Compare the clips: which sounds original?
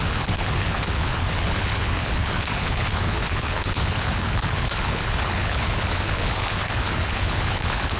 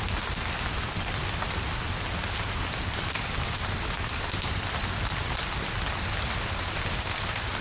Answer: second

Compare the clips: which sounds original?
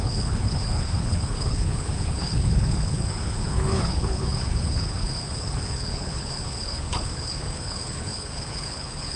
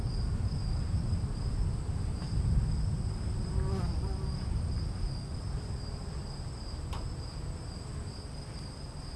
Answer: second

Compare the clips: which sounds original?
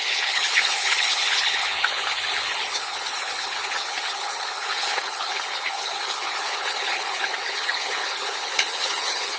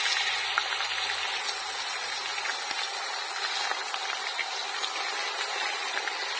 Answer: second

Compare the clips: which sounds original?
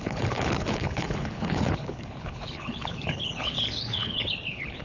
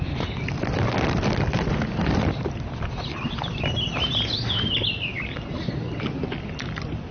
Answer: second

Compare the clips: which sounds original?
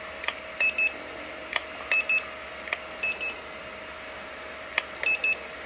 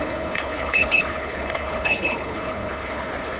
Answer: first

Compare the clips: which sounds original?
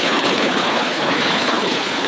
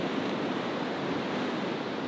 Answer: second